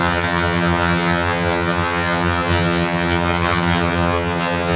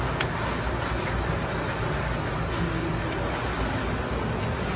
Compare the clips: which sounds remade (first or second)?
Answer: first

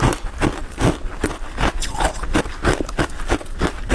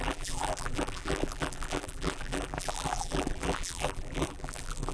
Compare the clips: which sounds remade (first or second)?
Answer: second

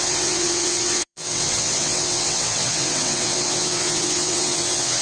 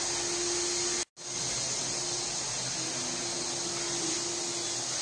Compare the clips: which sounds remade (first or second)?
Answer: first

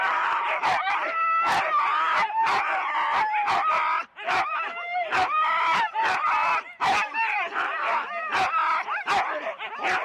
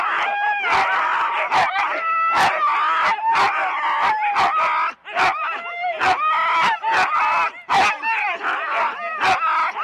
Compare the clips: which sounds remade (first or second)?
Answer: first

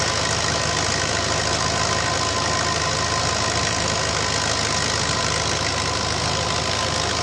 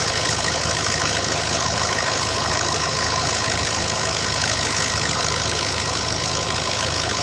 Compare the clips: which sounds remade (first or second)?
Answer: second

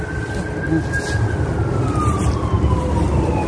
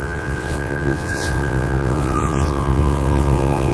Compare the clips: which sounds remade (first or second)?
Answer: second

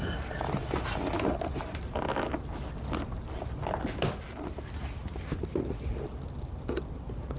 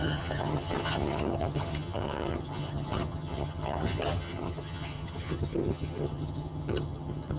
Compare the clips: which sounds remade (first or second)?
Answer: second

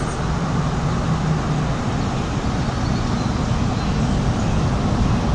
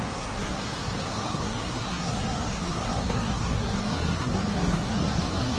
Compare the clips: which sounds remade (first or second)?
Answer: second